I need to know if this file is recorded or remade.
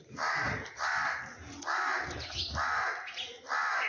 recorded